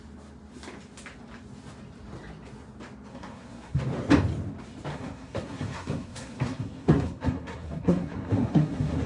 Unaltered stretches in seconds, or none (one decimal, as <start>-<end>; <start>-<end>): 0.0-3.1; 3.8-4.9